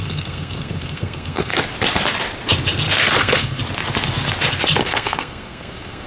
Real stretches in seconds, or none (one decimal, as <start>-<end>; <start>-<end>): 1.5-3.2; 3.6-4.8